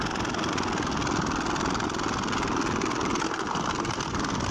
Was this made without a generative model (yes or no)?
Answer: yes